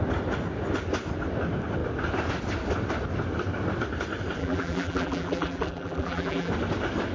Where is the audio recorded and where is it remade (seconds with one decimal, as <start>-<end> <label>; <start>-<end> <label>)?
0.0-4.4 recorded; 4.4-6.5 remade; 6.5-7.1 recorded